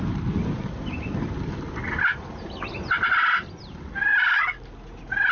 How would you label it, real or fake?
real